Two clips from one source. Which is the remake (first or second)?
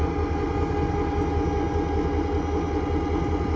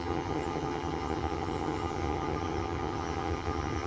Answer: second